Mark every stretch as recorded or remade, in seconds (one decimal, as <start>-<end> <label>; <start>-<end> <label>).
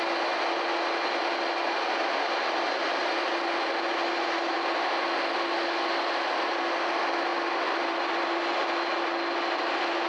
0.0-10.1 recorded